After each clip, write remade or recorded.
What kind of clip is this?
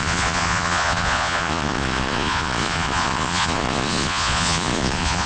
remade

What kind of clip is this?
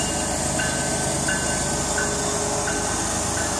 recorded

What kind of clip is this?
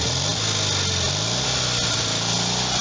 recorded